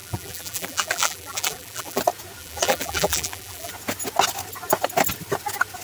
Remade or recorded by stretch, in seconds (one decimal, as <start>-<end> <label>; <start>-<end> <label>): 0.0-2.0 remade; 2.0-2.4 recorded; 2.4-3.7 remade; 3.7-5.8 recorded